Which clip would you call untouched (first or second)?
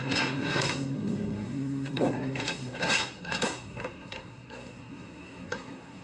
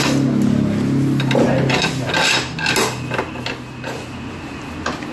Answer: second